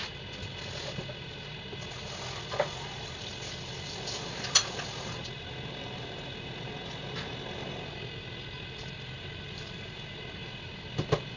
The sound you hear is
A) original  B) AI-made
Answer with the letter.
A